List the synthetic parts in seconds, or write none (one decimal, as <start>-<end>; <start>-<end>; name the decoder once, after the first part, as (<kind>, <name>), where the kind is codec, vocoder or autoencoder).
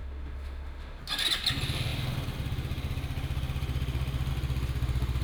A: 0.0-1.0 (autoencoder, DAC-VAE)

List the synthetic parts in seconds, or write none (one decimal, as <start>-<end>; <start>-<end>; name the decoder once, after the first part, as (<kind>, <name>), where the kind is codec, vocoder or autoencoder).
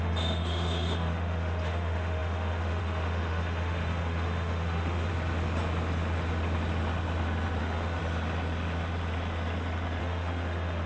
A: 0.0-5.1 (autoencoder, DAC-VAE); 7.6-8.0; 10.0-10.9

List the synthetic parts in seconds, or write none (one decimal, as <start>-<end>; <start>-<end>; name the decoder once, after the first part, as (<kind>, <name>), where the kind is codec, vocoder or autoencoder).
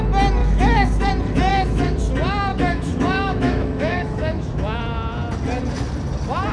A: 0.4-1.1 (autoencoder, DAC-VAE); 1.5-2.0; 2.5-4.8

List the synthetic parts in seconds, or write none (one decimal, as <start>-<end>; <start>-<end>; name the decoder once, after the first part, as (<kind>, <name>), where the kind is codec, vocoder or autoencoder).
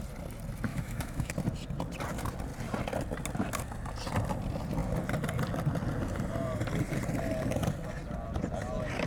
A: 0.7-1.3 (autoencoder, DAC-VAE)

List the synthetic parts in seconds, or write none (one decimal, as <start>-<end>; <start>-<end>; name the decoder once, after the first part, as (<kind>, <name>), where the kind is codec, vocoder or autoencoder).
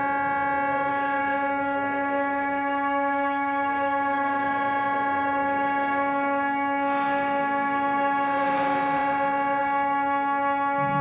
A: 0.9-4.5 (autoencoder, DAC-VAE)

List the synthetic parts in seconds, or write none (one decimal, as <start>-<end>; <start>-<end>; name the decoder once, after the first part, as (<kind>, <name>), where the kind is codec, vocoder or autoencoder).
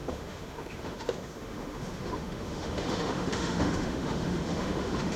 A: 0.0-5.2 (autoencoder, DAC-VAE)